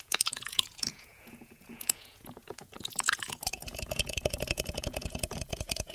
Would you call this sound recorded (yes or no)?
no